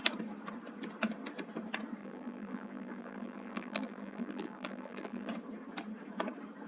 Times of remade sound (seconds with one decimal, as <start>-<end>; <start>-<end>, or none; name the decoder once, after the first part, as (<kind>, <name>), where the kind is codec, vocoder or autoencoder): 2.0-5.3 (vocoder, BigVGAN v2)